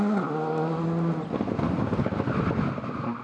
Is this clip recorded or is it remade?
recorded